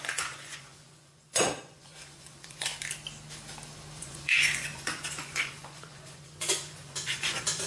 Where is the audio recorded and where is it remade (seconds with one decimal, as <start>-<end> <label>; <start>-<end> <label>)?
0.0-2.7 remade; 2.7-4.0 recorded; 4.0-7.7 remade

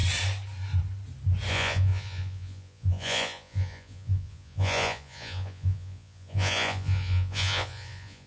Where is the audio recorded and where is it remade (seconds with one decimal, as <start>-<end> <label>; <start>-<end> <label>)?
0.0-1.5 recorded; 1.5-8.3 remade

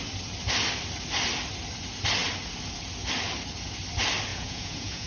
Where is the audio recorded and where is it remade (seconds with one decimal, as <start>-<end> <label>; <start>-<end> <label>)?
0.0-4.3 recorded; 4.3-5.1 remade

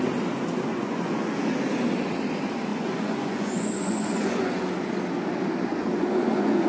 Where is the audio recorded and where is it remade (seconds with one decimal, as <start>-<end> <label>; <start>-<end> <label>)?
0.0-0.7 recorded; 0.7-1.3 remade; 1.3-2.7 recorded; 2.7-4.6 remade; 4.6-5.7 recorded; 5.7-6.7 remade

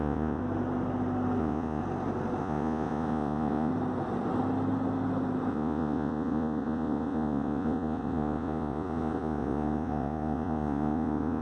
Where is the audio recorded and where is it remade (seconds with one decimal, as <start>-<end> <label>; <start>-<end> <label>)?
0.0-0.4 remade; 0.4-1.4 recorded; 1.4-1.8 remade; 1.8-2.4 recorded; 2.4-3.7 remade; 3.7-5.5 recorded; 5.5-11.4 remade

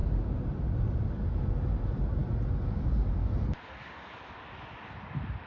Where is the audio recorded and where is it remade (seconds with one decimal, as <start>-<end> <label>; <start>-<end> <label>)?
0.0-5.5 recorded